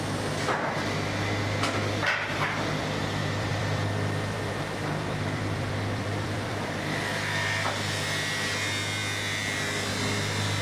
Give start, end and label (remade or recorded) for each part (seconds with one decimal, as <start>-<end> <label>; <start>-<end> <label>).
0.0-3.2 recorded; 3.2-6.8 remade; 6.8-10.6 recorded